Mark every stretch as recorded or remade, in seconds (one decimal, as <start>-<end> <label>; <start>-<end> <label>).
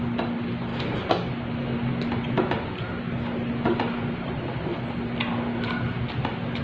0.0-6.6 recorded